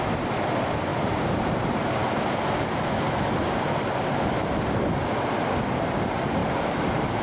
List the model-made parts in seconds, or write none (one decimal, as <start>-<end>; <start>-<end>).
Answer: 0.0-0.9; 1.6-2.0; 6.0-6.4